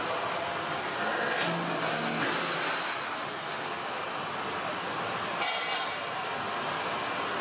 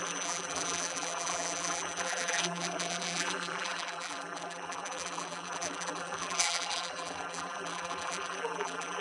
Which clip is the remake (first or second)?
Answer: second